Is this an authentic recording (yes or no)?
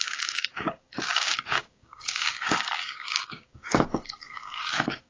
no